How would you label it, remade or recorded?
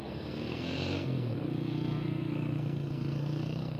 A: remade